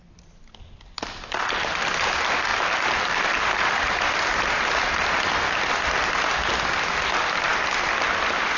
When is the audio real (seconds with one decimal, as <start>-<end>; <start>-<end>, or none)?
0.0-2.5; 5.2-8.6